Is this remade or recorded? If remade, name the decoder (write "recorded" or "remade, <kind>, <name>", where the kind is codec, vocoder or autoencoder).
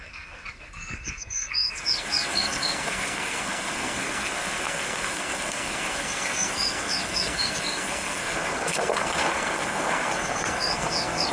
remade, codec, SNAC